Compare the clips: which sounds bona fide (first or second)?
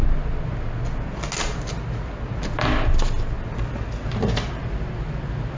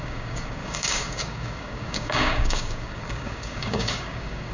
first